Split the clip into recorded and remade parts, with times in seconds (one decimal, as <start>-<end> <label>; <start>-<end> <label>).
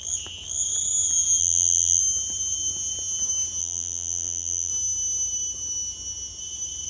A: 0.0-1.4 recorded; 1.4-2.0 remade; 2.0-3.6 recorded; 3.6-4.7 remade; 4.7-6.9 recorded